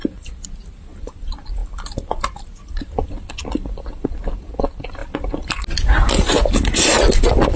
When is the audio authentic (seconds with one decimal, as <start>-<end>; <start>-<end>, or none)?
0.0-7.6